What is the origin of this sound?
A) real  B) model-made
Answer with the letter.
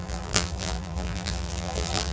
B